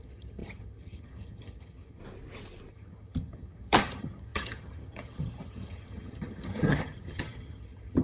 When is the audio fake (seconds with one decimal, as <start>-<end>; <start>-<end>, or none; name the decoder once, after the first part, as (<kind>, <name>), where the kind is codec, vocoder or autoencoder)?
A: 0.0-2.0 (vocoder, HiFi-GAN); 2.7-8.0